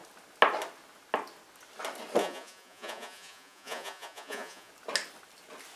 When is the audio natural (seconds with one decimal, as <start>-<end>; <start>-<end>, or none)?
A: 0.0-2.2; 4.7-5.8